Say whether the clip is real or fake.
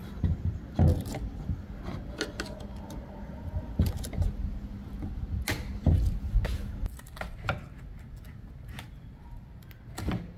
real